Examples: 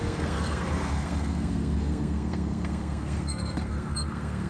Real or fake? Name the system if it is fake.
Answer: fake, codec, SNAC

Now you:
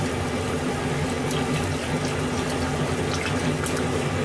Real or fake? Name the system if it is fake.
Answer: real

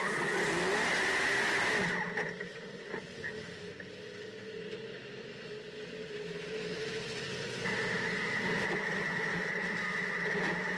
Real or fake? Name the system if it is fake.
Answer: real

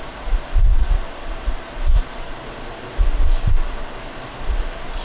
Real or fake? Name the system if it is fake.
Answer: real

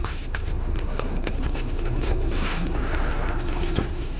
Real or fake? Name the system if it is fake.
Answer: fake, codec, SNAC